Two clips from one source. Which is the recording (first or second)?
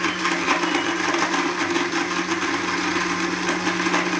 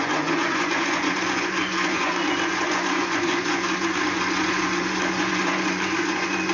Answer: first